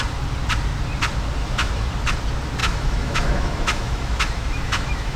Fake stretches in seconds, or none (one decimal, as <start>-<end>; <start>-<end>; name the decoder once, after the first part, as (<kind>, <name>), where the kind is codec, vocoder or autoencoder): 1.4-1.9 (autoencoder, DAC-VAE); 2.6-5.2